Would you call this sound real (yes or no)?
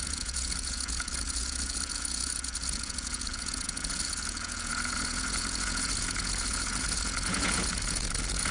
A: no